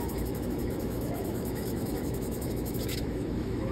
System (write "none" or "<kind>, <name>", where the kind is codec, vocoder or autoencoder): autoencoder, DAC-VAE